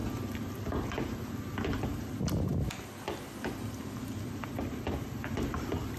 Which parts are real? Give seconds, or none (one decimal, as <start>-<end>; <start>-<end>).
0.0-6.0